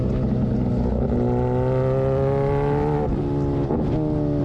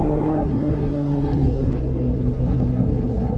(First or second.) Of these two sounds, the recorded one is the first